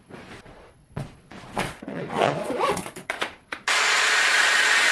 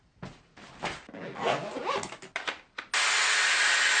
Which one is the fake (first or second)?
first